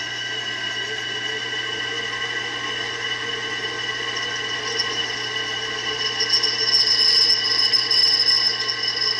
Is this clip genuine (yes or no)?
yes